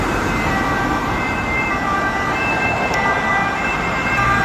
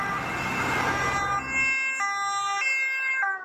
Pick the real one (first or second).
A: second